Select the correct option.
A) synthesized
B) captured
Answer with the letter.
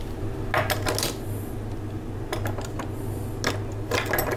B